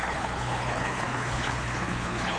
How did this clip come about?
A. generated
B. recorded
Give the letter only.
A